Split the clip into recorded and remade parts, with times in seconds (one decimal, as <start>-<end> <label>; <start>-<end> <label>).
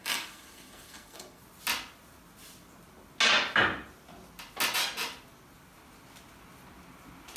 0.0-1.4 remade; 1.4-7.4 recorded